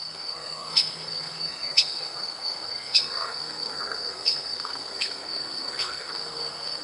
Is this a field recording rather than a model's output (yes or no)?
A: no